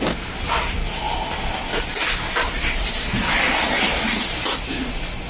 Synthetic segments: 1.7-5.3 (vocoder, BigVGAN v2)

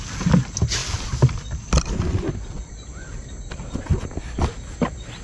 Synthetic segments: none

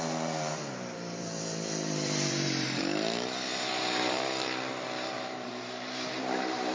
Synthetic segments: 0.0-6.7 (vocoder, BigVGAN v2)